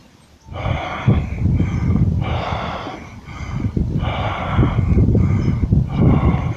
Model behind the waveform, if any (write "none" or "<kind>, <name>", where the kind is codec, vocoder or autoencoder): none